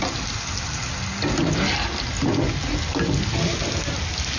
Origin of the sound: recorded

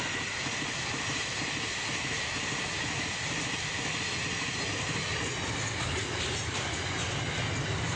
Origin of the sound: recorded